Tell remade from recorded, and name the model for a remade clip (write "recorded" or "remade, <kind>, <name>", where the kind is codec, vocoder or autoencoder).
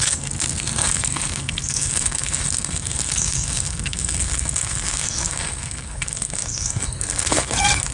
remade, codec, SNAC